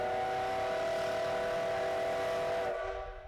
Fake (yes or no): no